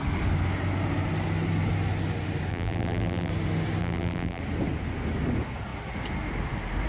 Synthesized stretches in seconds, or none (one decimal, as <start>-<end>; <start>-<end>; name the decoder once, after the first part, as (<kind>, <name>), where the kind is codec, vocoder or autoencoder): 2.5-3.3 (vocoder, BigVGAN v2); 3.8-4.4